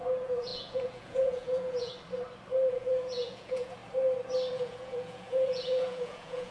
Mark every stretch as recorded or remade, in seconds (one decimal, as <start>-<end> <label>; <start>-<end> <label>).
0.0-1.9 remade; 1.9-2.7 recorded; 2.7-3.8 remade; 3.8-4.5 recorded; 4.5-6.5 remade